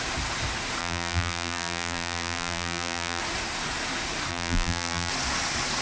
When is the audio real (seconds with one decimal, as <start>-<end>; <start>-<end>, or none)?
0.0-0.8; 3.2-4.3; 5.1-5.8